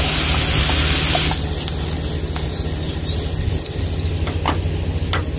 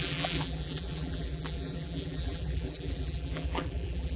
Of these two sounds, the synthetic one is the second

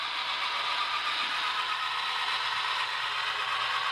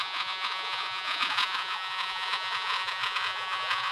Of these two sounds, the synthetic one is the second